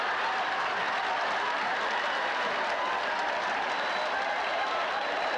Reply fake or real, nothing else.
real